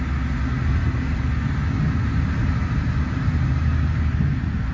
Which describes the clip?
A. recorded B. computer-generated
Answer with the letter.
A